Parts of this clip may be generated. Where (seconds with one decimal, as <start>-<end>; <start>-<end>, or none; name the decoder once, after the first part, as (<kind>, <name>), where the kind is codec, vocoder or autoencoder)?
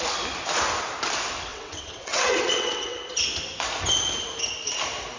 1.5-3.1 (vocoder, WaveNeXt)